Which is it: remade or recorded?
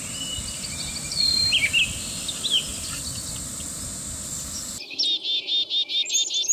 recorded